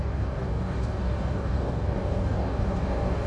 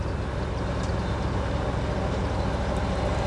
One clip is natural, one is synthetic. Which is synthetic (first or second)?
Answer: first